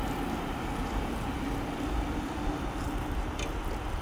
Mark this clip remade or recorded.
recorded